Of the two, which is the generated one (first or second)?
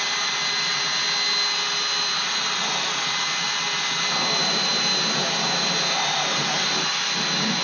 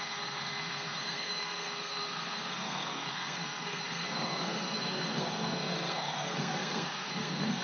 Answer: second